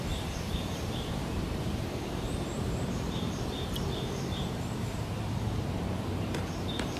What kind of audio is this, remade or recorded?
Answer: remade